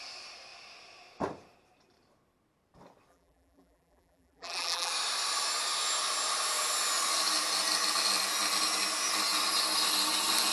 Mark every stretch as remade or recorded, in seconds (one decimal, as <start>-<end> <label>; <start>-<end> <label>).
0.0-3.1 recorded; 3.1-4.9 remade; 4.9-10.5 recorded